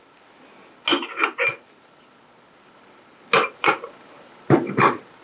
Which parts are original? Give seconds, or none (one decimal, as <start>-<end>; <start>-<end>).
0.0-5.2